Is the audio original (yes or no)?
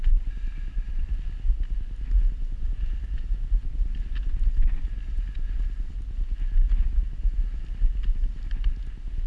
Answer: yes